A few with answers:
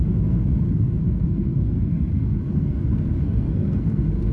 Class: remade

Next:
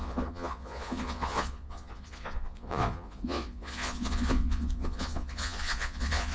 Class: remade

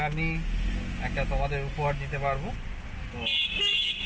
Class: recorded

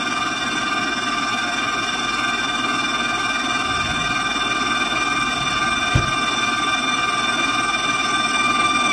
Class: recorded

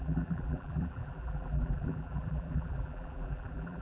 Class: remade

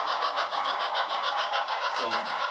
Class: remade